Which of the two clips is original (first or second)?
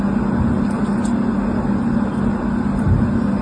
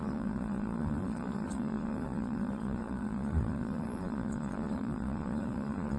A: first